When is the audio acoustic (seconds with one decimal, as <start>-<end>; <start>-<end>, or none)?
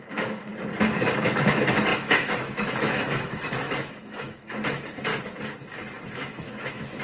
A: 0.5-1.5; 5.1-6.1